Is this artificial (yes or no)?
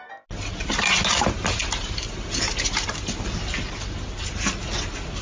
no